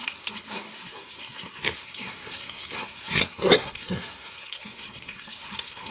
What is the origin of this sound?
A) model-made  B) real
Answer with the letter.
A